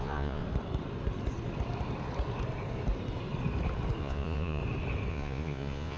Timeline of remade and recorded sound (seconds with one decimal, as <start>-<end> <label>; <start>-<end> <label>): 0.0-0.4 remade; 0.4-4.0 recorded; 4.0-4.6 remade; 4.6-5.1 recorded; 5.1-6.0 remade